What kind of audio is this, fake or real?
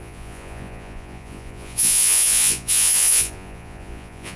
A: fake